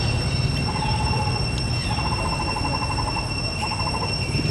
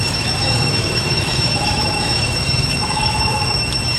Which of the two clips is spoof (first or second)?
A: second